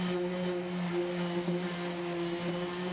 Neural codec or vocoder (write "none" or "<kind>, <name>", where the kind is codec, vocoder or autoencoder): none